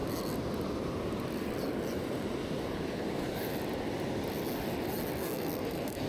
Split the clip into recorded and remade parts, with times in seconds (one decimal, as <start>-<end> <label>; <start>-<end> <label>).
0.0-5.2 recorded; 5.2-6.1 remade